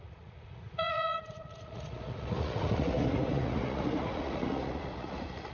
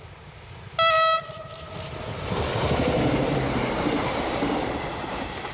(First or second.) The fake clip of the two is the first